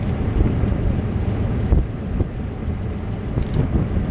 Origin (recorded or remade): recorded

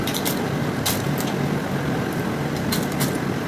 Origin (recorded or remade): recorded